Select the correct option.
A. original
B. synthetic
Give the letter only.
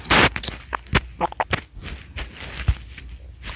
A